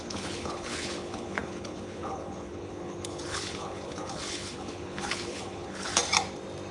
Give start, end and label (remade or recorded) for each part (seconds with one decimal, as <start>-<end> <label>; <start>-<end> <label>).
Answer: 0.0-5.9 remade; 5.9-6.7 recorded